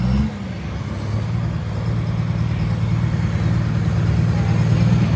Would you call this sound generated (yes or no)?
no